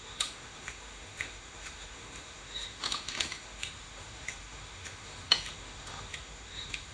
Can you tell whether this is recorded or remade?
remade